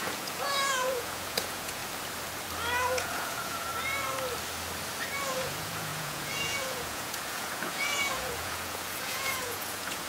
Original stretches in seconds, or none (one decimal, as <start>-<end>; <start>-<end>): 1.8-2.8; 3.7-5.3